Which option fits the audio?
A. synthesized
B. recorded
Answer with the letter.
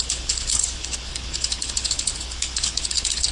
A